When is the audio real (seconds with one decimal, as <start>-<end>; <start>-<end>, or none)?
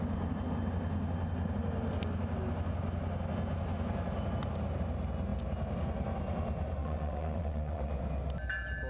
0.0-6.8; 7.9-8.9